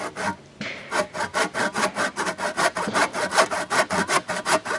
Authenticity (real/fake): real